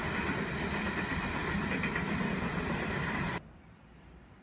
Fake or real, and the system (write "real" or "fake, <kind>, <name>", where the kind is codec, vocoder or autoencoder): real